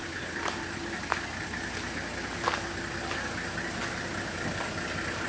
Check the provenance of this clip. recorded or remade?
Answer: recorded